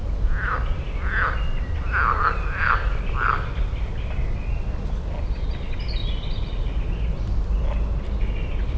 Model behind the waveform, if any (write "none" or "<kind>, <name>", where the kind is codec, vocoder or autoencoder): none